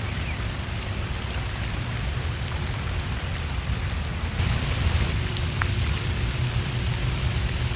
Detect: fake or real real